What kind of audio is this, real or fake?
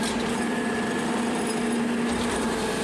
fake